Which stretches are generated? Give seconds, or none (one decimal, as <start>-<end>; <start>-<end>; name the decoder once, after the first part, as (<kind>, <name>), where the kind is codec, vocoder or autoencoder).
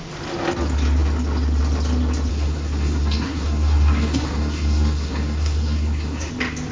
2.3-6.3 (codec, SNAC)